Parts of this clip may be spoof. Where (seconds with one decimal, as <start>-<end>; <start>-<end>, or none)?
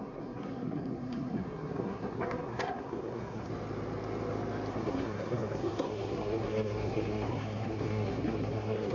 0.0-3.5; 4.7-8.9